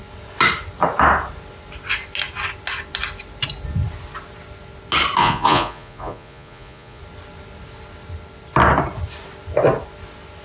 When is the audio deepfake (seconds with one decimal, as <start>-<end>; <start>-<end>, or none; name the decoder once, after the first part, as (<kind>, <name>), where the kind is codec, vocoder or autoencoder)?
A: 5.2-7.0 (vocoder, Vocos)